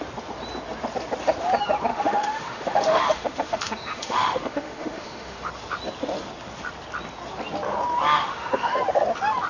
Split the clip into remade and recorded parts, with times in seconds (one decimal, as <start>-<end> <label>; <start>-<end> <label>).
0.0-1.9 recorded; 1.9-5.5 remade; 5.5-8.2 recorded; 8.2-8.8 remade; 8.8-9.5 recorded